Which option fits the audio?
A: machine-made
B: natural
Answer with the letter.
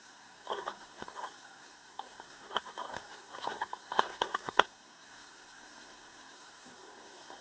A